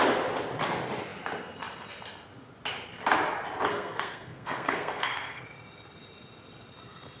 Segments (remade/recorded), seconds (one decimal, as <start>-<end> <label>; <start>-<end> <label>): 0.0-3.7 recorded; 3.7-5.4 remade; 5.4-7.2 recorded